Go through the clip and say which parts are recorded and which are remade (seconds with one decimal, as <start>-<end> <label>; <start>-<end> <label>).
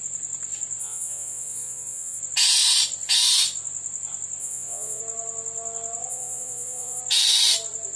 0.0-0.8 recorded; 0.8-2.2 remade; 2.2-4.4 recorded; 4.4-5.0 remade; 5.0-6.1 recorded; 6.1-7.0 remade; 7.0-8.0 recorded